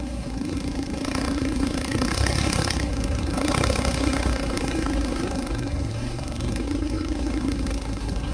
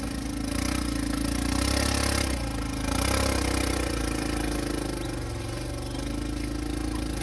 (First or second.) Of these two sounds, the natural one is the second